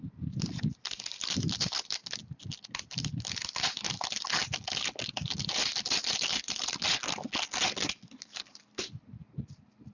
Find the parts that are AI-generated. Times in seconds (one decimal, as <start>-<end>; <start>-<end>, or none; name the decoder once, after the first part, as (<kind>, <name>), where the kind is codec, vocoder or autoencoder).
none